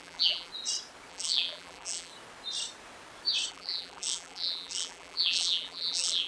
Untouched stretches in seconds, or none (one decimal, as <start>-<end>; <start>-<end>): 0.5-1.1; 2.1-3.5